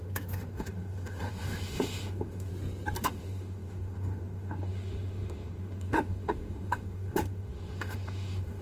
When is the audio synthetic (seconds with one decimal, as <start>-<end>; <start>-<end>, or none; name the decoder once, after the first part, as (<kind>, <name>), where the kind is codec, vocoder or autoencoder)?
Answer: 0.0-2.5 (autoencoder, DAC-VAE); 3.0-8.6